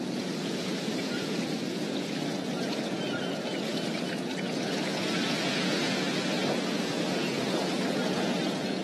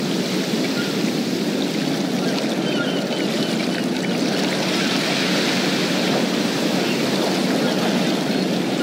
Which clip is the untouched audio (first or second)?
second